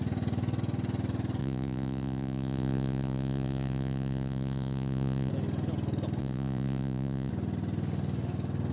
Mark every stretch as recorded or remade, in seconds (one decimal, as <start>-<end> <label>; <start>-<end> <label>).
0.0-1.4 recorded; 1.4-5.3 remade; 5.3-6.2 recorded; 6.2-7.3 remade; 7.3-8.7 recorded